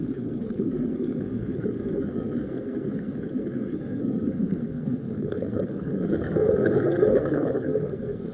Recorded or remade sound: remade